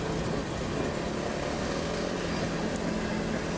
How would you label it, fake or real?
real